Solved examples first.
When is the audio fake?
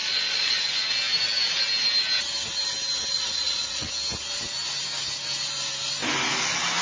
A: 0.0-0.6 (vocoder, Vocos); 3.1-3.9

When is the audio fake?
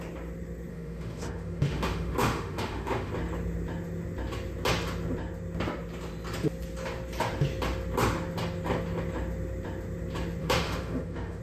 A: 0.7-3.1 (autoencoder, DAC-VAE); 10.4-11.4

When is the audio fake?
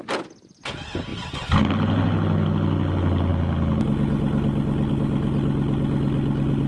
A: none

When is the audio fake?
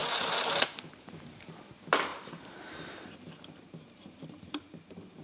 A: 0.0-1.7 (vocoder, BigVGAN v2); 2.1-5.2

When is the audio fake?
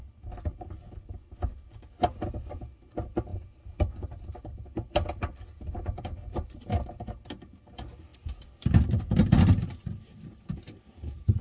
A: 3.3-7.0 (vocoder, BigVGAN v2)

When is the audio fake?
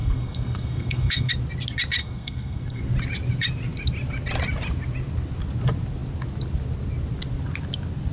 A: 0.0-1.3 (codec, SNAC); 2.0-2.8